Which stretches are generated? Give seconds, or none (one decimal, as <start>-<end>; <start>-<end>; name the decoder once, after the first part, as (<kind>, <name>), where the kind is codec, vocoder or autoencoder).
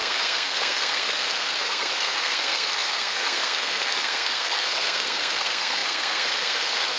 0.0-7.0 (codec, SNAC)